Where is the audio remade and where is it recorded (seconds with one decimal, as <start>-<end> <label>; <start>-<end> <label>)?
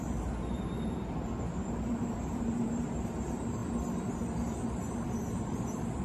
0.0-3.6 remade; 3.6-4.4 recorded; 4.4-6.0 remade